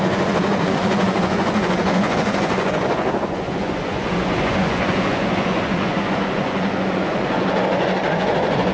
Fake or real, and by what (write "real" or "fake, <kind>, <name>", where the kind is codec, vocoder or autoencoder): fake, vocoder, Vocos